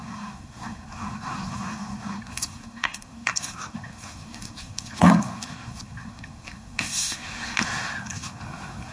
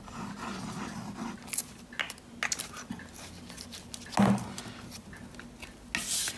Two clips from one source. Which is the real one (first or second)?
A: second